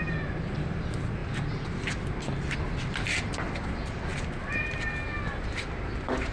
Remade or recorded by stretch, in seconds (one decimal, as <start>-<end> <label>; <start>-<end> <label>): 0.0-6.3 recorded